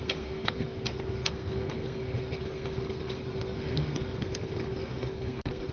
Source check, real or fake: fake